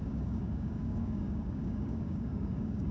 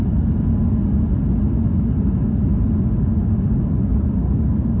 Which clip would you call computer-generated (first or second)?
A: first